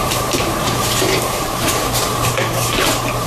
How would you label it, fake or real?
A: fake